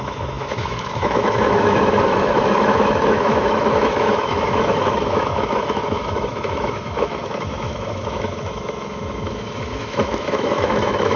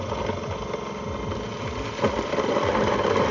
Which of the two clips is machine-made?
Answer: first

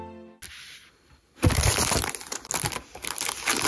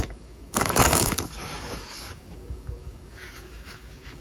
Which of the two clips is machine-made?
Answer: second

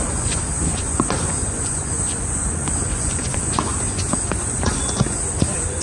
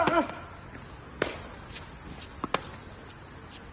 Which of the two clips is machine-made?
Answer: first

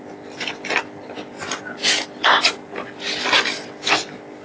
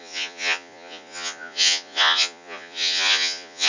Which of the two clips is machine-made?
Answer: second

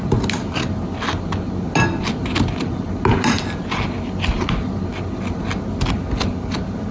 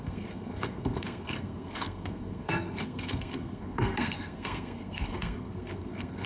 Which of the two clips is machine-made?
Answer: second